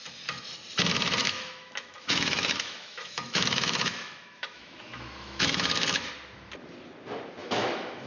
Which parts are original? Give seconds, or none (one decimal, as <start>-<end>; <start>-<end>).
0.0-1.2; 6.1-7.4